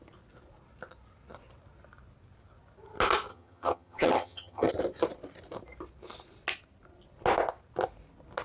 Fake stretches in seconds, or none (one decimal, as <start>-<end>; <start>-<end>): 3.3-4.7